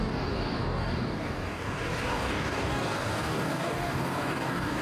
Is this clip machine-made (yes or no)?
yes